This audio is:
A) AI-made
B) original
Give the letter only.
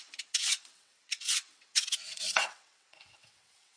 A